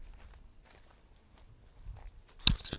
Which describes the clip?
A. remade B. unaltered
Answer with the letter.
B